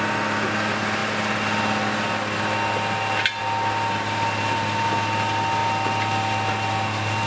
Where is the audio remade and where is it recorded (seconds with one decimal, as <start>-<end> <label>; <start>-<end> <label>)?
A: 0.0-7.3 recorded